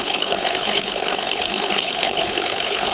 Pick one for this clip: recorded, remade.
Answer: remade